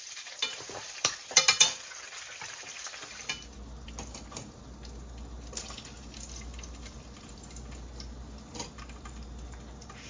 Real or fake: real